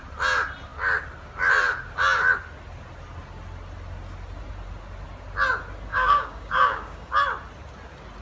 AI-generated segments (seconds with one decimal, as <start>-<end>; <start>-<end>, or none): 5.9-7.1

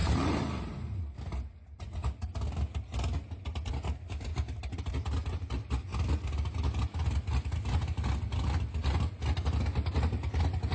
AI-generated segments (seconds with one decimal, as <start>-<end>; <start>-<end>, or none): 0.0-1.0; 4.3-4.9

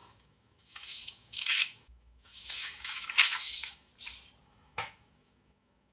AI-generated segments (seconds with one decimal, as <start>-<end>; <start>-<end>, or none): 0.0-3.9; 4.4-5.9

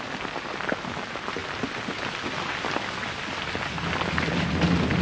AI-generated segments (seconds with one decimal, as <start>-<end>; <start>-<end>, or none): none

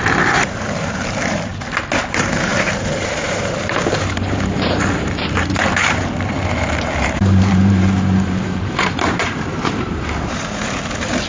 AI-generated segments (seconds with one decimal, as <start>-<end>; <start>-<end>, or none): 0.0-1.5; 2.1-11.3

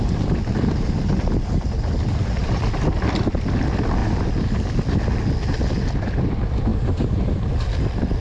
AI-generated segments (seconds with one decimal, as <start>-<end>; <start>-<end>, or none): 2.4-3.1